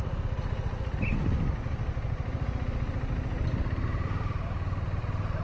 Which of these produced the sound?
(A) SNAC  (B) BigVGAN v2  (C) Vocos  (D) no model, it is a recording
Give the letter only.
D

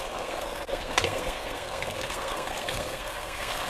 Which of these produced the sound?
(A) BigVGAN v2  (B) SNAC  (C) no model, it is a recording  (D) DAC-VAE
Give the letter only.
B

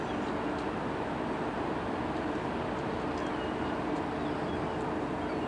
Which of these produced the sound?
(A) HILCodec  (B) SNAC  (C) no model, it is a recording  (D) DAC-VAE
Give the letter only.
C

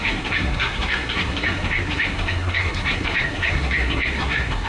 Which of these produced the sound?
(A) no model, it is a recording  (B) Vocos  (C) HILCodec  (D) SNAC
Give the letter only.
D